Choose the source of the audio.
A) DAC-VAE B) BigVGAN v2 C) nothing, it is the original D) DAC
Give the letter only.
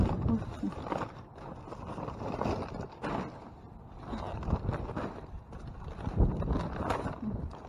C